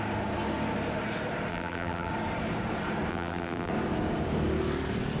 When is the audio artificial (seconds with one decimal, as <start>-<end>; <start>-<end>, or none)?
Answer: 1.5-2.1; 3.1-3.7